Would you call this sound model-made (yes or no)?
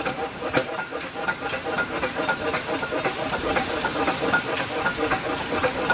no